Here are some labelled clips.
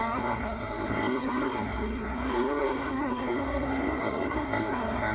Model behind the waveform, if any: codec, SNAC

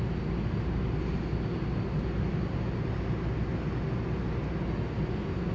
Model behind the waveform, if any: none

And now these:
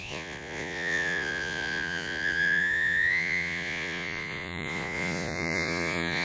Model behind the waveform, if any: vocoder, Vocos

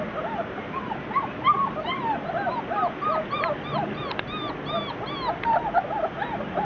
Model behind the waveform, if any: none